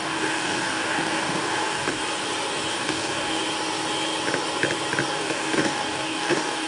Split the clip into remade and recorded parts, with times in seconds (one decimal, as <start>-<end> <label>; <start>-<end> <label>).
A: 0.0-2.0 remade; 2.0-2.7 recorded; 2.7-3.4 remade; 3.4-5.1 recorded; 5.1-6.7 remade